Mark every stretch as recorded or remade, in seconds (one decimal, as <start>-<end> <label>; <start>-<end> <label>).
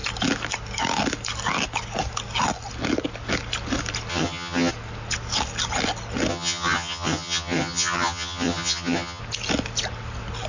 0.0-4.1 recorded; 4.1-4.7 remade; 4.7-6.3 recorded; 6.3-9.2 remade; 9.2-10.5 recorded